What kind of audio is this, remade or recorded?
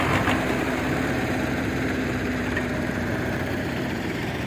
remade